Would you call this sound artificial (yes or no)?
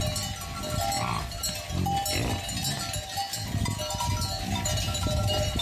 no